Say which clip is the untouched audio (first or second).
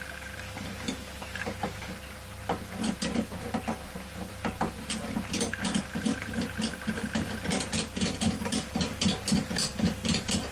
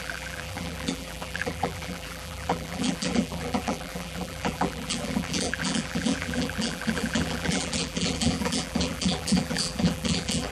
first